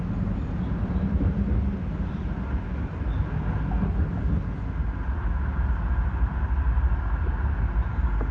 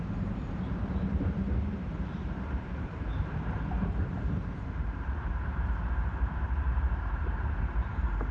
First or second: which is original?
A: first